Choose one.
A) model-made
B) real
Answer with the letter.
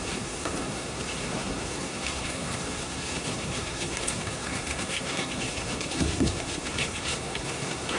A